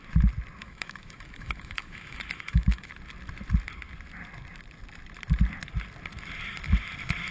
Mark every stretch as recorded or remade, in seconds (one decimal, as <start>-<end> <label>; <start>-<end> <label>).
0.0-0.6 recorded; 0.6-2.9 remade; 2.9-7.3 recorded